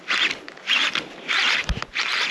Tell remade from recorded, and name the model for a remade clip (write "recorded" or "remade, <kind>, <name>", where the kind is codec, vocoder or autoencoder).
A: recorded